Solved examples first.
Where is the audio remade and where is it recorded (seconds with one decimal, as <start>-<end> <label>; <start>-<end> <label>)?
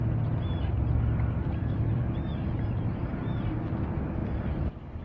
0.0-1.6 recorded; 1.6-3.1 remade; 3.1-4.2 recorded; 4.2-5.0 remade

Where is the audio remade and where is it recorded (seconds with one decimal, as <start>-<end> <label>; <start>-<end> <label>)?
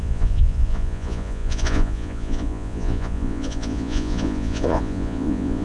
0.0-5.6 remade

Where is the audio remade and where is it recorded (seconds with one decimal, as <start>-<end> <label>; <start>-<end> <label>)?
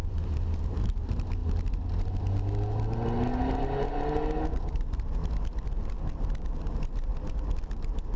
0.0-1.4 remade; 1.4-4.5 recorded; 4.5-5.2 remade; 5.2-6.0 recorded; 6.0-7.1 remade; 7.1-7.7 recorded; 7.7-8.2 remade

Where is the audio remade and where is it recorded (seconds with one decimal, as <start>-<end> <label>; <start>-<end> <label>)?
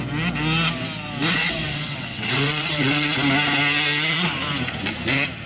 0.0-1.4 recorded; 1.4-3.1 remade; 3.1-5.5 recorded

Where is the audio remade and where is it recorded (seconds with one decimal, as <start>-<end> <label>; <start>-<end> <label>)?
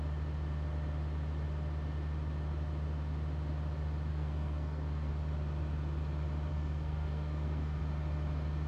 0.0-4.1 recorded; 4.1-5.1 remade; 5.1-6.5 recorded; 6.5-7.8 remade; 7.8-8.7 recorded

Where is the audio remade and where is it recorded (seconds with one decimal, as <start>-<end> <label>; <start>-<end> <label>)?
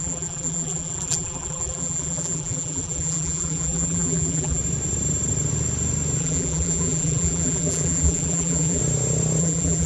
0.0-4.6 remade; 4.6-6.2 recorded; 6.2-8.8 remade; 8.8-9.4 recorded; 9.4-9.9 remade